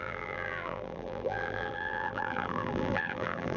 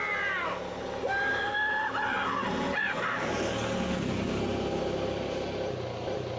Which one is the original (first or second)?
second